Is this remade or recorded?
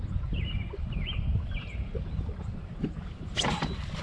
remade